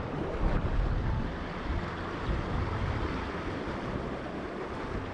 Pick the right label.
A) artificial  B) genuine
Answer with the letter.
B